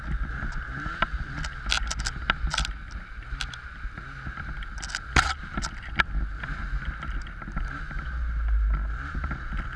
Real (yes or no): yes